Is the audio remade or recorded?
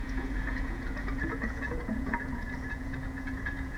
remade